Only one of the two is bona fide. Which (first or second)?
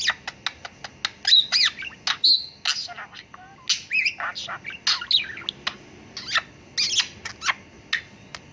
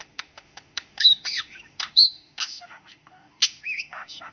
first